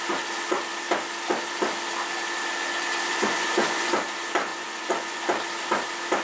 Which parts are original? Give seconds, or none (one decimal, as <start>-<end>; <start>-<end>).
0.0-3.1; 3.9-4.5; 5.2-6.2